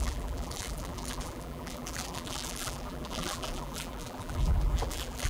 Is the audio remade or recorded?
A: remade